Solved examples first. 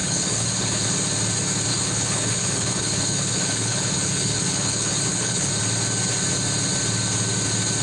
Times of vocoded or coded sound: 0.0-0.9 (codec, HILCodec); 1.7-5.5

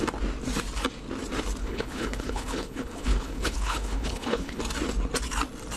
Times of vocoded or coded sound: 1.6-4.6 (codec, HILCodec)